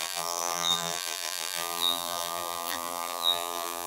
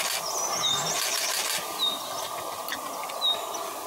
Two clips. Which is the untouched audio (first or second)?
second